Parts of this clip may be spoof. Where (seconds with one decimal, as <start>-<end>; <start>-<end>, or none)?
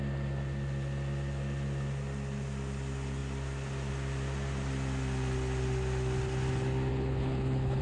6.9-7.8